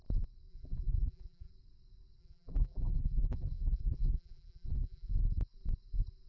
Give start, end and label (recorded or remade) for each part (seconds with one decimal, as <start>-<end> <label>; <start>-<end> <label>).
0.0-0.5 recorded; 0.5-1.5 remade; 1.5-2.2 recorded; 2.2-5.1 remade; 5.1-6.3 recorded